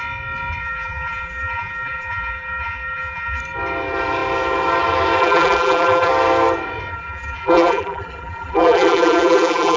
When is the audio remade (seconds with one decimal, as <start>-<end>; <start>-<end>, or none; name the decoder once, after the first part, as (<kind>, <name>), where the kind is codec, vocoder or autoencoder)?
0.6-3.4 (vocoder, BigVGAN v2); 5.2-6.1; 6.9-9.8